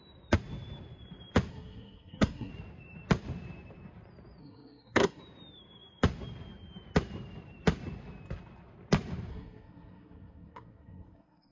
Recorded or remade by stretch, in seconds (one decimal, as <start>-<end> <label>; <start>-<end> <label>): 0.0-1.5 recorded; 1.5-2.5 remade; 2.5-4.4 recorded; 4.4-5.2 remade; 5.2-9.3 recorded; 9.3-11.5 remade